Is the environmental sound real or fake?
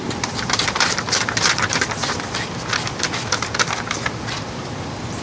fake